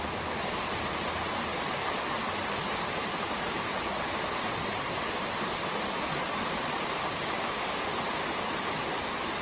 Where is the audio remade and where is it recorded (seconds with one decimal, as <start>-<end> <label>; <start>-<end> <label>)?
0.0-7.0 recorded; 7.0-7.8 remade; 7.8-9.4 recorded